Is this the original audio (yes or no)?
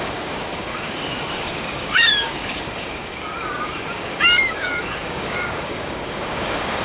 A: no